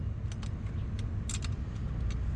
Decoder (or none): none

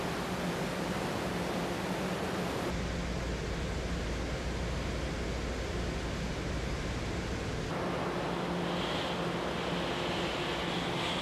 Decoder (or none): none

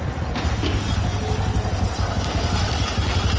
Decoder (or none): none